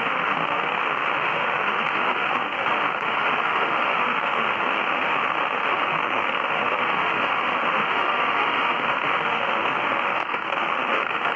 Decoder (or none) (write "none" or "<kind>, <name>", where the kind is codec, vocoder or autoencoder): autoencoder, DAC-VAE